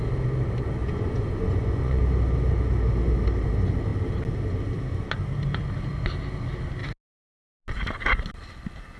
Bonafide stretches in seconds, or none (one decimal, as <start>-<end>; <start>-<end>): 0.0-0.8; 2.0-9.0